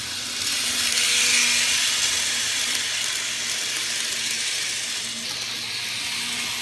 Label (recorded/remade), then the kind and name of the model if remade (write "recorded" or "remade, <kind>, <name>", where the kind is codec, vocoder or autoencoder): recorded